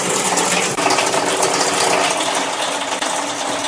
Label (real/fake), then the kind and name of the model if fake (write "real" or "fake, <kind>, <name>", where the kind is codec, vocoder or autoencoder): real